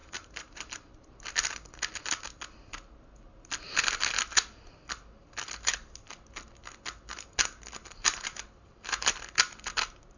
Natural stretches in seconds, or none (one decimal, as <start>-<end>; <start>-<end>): 0.9-7.8; 9.1-10.2